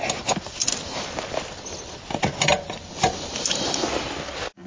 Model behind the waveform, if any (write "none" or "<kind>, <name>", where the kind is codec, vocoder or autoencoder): none